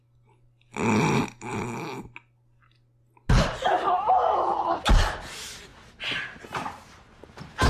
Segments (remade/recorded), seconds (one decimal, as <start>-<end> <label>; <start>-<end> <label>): 0.0-7.7 recorded